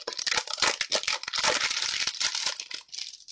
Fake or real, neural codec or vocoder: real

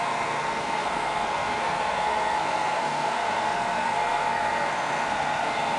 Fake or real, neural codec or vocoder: fake, codec, SNAC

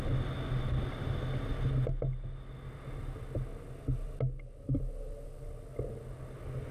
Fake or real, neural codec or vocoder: real